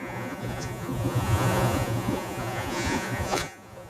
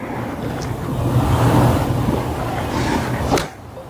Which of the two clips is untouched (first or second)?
second